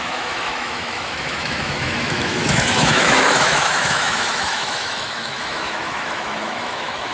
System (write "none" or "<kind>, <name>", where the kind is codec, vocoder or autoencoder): autoencoder, DAC-VAE